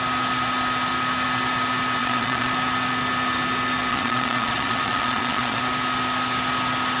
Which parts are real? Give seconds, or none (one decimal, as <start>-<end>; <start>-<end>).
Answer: 0.0-2.0; 2.5-3.9; 5.6-7.0